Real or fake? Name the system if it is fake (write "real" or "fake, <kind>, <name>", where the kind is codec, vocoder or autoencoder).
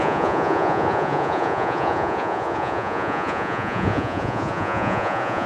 fake, vocoder, Vocos